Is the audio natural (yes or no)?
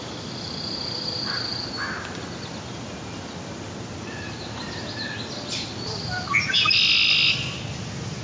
yes